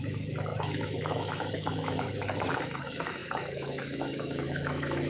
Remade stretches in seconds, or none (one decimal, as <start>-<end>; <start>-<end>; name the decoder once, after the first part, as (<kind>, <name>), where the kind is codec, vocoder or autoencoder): 0.0-5.1 (autoencoder, DAC-VAE)